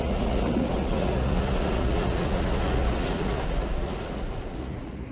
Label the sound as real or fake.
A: fake